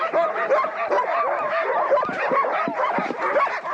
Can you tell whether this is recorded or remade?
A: remade